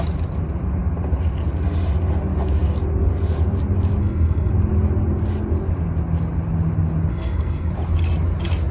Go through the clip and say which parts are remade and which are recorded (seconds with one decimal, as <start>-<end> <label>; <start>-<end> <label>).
0.0-4.0 recorded; 4.0-4.5 remade; 4.5-7.1 recorded; 7.1-7.7 remade; 7.7-8.7 recorded